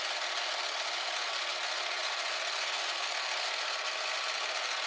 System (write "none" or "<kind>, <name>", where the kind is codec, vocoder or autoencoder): none